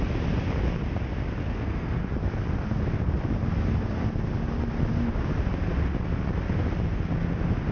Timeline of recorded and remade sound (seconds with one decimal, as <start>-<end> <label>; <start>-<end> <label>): 0.0-1.4 recorded; 1.4-2.0 remade; 2.0-7.7 recorded

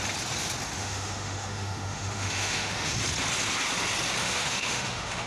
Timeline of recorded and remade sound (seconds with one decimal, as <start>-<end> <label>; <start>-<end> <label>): 0.0-0.8 recorded; 0.8-3.0 remade; 3.0-4.2 recorded; 4.2-5.3 remade

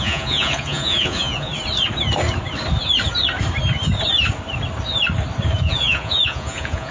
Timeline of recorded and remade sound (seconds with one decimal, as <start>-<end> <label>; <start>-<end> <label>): 0.0-1.5 remade; 1.5-5.6 recorded; 5.6-6.9 remade